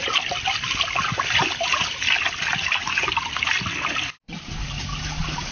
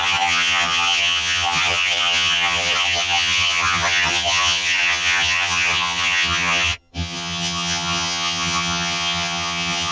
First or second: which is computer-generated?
second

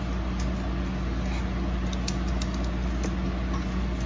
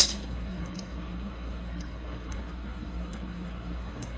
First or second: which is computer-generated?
second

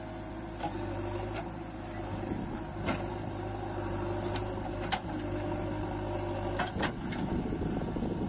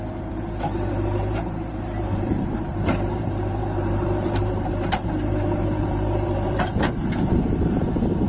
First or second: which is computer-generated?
second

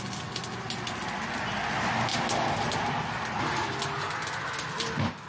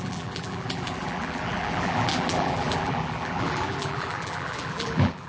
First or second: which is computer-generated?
second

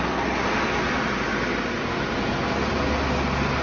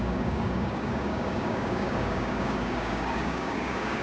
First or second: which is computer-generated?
second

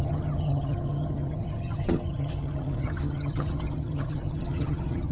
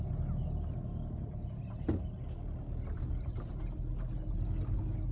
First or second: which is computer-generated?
first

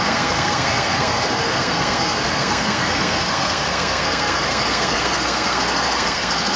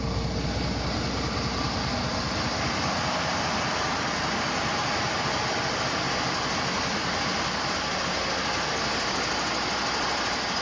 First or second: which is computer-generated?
first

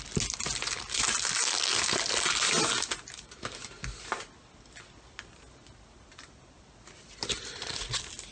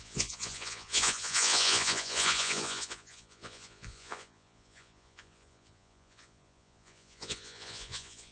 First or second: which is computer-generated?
second